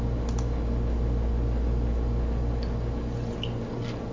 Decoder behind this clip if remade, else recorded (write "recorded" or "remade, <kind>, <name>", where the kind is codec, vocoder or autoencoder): recorded